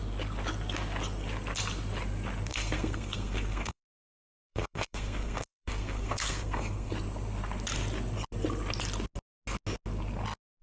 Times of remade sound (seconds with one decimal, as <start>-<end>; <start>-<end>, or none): 2.5-6.9